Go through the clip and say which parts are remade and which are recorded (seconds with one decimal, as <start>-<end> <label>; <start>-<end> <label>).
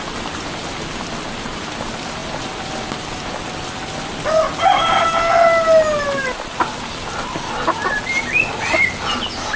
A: 0.0-9.6 recorded